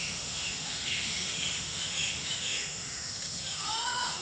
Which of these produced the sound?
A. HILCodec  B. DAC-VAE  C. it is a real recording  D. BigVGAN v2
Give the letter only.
B